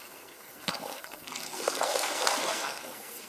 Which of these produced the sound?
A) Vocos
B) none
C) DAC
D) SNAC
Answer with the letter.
D